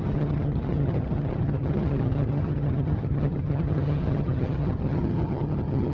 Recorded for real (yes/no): no